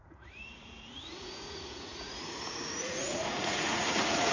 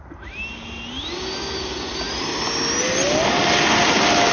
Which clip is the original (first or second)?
second